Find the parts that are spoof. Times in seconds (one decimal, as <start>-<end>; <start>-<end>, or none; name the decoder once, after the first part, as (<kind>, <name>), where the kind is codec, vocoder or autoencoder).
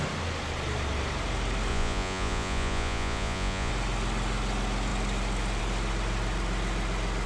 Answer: 1.7-3.7 (vocoder, Vocos)